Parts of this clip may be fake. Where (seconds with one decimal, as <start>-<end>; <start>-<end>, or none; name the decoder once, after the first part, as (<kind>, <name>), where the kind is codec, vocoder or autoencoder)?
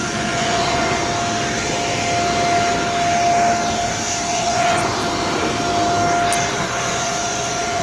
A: 0.0-1.0 (vocoder, Vocos); 4.3-5.0; 6.5-7.8